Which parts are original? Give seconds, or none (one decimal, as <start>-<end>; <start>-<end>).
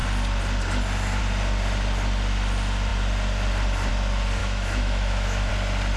0.0-4.4; 5.5-6.0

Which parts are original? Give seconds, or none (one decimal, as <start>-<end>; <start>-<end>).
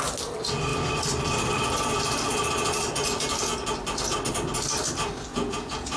0.0-5.3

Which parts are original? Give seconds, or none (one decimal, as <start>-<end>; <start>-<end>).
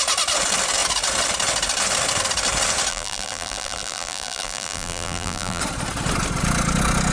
0.0-2.9; 5.6-7.1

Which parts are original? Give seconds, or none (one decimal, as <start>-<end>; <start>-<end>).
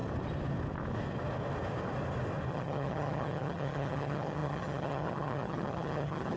0.0-2.5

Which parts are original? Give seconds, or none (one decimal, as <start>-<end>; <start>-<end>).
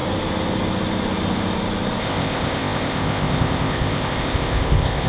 0.0-2.0